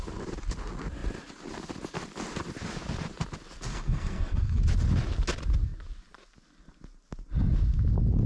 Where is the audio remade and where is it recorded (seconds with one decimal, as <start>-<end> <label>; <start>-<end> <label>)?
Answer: 0.0-3.7 recorded; 3.7-4.6 remade; 4.6-8.3 recorded